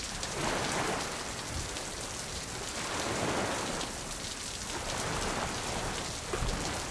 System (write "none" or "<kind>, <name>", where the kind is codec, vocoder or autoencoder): none